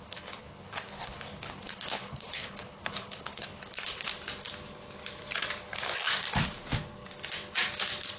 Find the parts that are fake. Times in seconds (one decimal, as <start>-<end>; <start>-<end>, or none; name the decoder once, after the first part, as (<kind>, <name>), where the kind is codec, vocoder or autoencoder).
0.0-4.1 (codec, HILCodec)